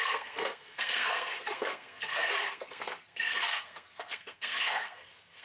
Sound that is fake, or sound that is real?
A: fake